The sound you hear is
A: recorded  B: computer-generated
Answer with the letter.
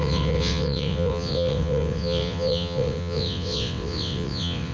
B